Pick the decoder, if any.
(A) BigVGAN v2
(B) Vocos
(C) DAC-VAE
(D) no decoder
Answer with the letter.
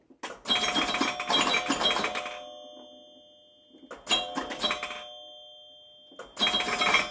D